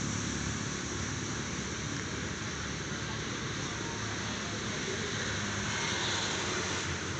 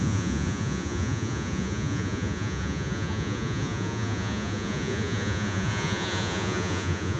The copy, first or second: second